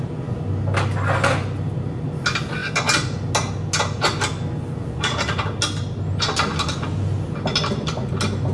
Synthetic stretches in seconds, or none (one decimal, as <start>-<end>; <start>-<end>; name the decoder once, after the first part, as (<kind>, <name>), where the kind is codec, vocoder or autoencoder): none

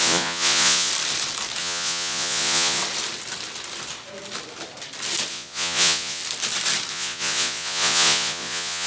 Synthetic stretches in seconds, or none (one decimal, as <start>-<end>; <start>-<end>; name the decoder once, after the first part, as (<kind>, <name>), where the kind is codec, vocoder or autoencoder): 0.0-0.9 (vocoder, Vocos); 1.6-2.8; 5.3-6.2; 6.9-8.9

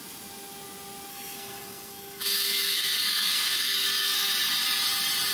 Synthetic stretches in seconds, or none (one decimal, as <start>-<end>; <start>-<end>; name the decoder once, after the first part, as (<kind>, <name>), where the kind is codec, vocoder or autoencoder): 1.1-4.3 (codec, SNAC)

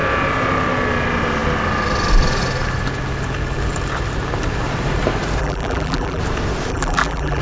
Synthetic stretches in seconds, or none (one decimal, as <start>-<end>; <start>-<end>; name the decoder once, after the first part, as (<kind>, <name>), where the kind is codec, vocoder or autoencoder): 5.4-6.2 (vocoder, BigVGAN v2); 6.7-7.4